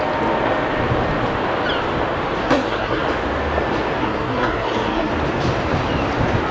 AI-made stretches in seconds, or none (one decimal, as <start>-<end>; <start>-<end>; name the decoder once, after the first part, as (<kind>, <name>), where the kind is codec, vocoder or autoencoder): 2.4-3.0 (codec, SNAC); 4.0-5.1